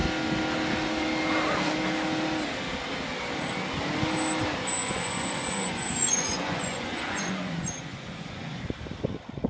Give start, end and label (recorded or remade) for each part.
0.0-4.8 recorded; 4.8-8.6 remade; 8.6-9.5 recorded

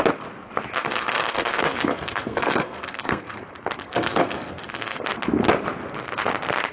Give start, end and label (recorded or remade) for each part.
0.0-0.8 recorded; 0.8-3.4 remade; 3.4-3.8 recorded; 3.8-5.0 remade; 5.0-6.7 recorded

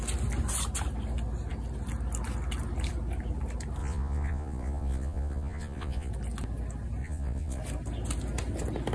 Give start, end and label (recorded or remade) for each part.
0.0-3.8 recorded; 3.8-6.1 remade; 6.1-7.0 recorded; 7.0-7.6 remade; 7.6-8.9 recorded

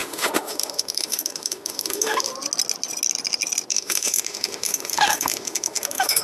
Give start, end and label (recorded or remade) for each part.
0.0-2.3 remade; 2.3-3.7 recorded; 3.7-6.2 remade

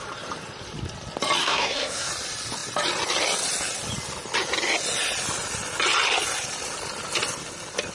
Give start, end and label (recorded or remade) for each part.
0.0-1.4 recorded; 1.4-2.1 remade; 2.1-7.9 recorded

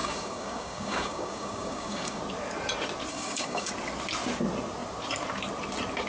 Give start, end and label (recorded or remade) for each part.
0.0-2.2 remade; 2.2-3.1 recorded; 3.1-3.7 remade; 3.7-6.1 recorded